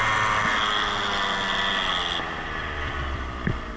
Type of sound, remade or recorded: recorded